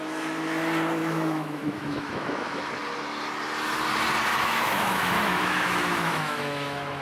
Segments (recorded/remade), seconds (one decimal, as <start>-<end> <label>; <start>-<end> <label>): 0.0-1.0 recorded; 1.0-2.7 remade; 2.7-4.3 recorded; 4.3-7.0 remade